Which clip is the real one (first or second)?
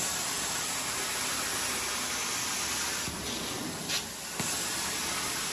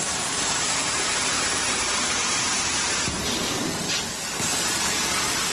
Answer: first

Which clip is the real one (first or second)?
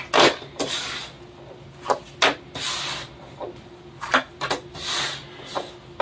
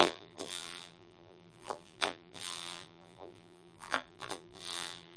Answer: first